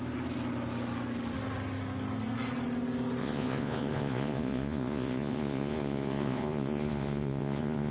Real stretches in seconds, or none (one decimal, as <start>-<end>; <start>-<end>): 0.0-3.2